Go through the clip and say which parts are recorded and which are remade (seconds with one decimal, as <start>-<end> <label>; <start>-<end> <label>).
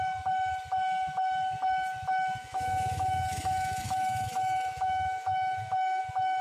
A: 0.0-2.4 recorded; 2.4-6.0 remade; 6.0-6.4 recorded